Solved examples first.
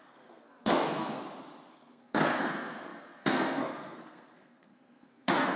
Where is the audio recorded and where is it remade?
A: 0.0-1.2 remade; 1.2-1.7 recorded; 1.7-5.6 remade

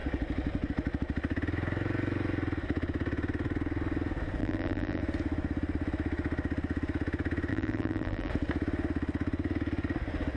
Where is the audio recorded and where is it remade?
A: 0.0-4.4 recorded; 4.4-5.0 remade; 5.0-7.5 recorded; 7.5-8.3 remade; 8.3-10.4 recorded

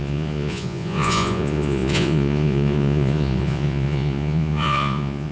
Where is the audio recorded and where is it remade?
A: 0.0-5.3 remade

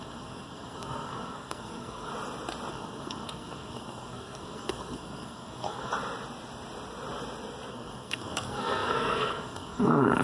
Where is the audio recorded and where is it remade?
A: 0.0-2.1 remade; 2.1-2.7 recorded; 2.7-5.9 remade; 5.9-7.7 recorded; 7.7-10.2 remade

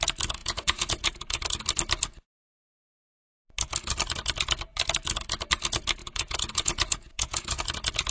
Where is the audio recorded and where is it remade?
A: 0.0-0.4 recorded; 0.4-1.4 remade; 1.4-6.0 recorded; 6.0-7.6 remade; 7.6-8.1 recorded

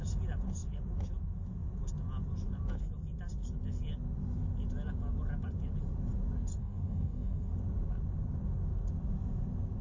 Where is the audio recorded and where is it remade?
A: 0.0-6.6 recorded; 6.6-7.5 remade; 7.5-9.8 recorded

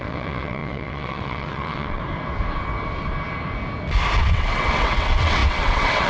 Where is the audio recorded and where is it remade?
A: 0.0-2.0 remade; 2.0-4.2 recorded; 4.2-6.1 remade